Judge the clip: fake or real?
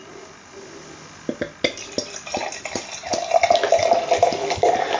real